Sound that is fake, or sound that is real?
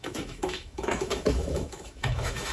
fake